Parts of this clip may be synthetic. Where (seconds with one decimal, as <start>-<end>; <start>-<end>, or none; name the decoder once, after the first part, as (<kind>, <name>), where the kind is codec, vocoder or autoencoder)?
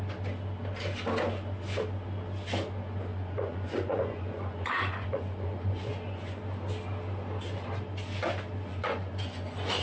3.1-6.4 (vocoder, Vocos); 8.7-9.8